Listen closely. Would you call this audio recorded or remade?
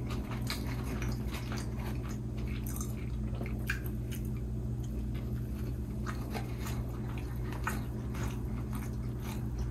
recorded